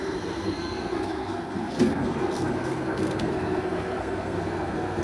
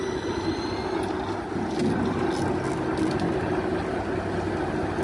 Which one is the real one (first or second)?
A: second